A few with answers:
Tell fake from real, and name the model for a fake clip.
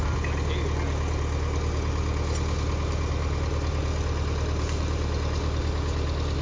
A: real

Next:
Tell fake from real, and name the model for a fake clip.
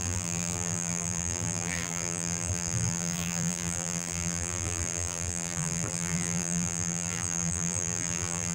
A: fake, vocoder, BigVGAN v2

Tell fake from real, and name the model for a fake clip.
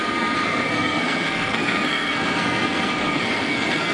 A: fake, codec, SNAC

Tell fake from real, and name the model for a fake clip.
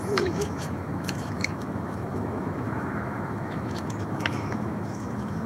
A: fake, autoencoder, DAC-VAE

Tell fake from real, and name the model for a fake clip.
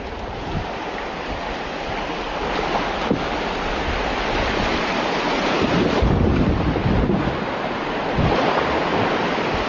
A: real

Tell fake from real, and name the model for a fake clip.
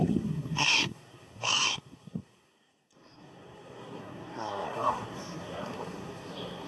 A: fake, codec, SNAC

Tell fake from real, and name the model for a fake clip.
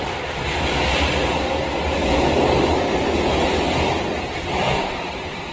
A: real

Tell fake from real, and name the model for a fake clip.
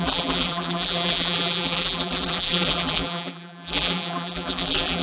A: fake, vocoder, BigVGAN v2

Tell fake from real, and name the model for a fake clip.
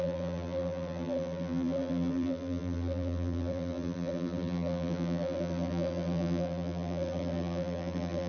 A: fake, vocoder, BigVGAN v2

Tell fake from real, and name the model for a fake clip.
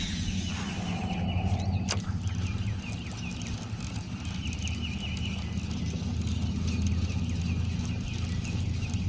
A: real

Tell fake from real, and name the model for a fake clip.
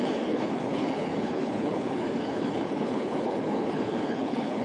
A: fake, codec, HILCodec